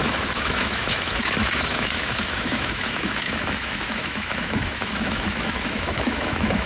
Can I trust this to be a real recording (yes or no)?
no